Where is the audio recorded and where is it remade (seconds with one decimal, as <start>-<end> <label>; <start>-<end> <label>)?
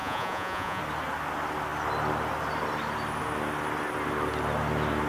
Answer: 0.0-0.8 remade; 0.8-5.1 recorded